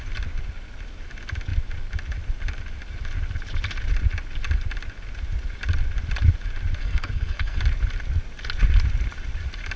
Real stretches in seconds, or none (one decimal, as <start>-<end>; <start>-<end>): 0.0-6.8; 7.6-9.8